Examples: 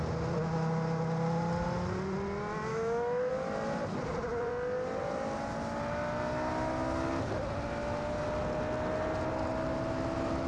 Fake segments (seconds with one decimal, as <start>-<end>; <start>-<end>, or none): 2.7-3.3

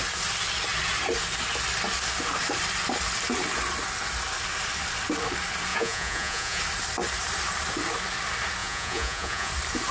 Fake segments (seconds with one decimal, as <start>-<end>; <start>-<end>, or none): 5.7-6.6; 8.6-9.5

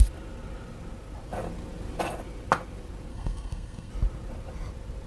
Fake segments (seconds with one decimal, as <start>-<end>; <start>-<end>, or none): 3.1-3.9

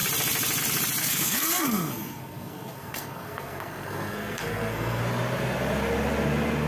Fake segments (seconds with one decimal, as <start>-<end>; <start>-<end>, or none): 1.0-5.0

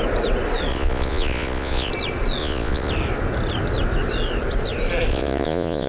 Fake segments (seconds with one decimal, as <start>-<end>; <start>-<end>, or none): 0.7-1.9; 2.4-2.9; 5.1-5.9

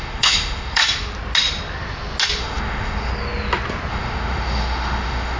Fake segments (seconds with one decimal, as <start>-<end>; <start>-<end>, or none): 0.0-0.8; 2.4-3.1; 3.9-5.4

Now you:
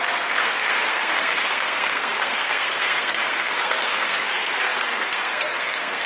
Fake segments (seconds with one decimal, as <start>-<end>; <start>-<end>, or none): 0.0-6.1